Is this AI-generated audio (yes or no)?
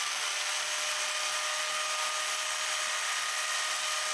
no